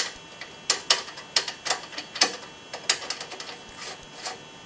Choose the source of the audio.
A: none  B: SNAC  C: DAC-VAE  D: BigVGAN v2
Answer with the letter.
A